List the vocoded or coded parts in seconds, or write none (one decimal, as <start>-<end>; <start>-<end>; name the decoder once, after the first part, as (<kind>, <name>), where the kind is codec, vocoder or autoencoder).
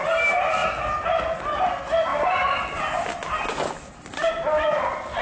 none